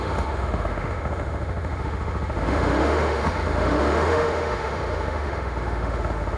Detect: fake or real fake